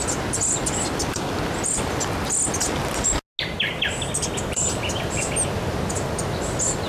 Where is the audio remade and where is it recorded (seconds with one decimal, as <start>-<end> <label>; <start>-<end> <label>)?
0.0-6.9 recorded